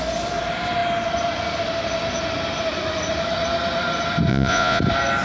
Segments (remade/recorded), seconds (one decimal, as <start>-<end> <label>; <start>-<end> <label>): 0.0-4.3 recorded; 4.3-4.8 remade; 4.8-5.2 recorded